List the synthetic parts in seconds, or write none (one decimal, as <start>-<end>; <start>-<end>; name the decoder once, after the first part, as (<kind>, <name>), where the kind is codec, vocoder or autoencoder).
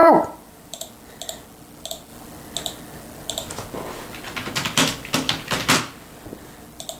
0.0-0.9 (vocoder, BigVGAN v2)